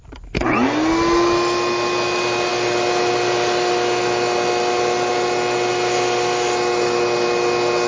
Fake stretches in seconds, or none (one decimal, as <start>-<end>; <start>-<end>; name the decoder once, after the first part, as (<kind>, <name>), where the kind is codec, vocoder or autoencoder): none